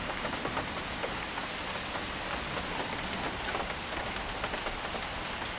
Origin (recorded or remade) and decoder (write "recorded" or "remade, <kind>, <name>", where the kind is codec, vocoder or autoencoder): recorded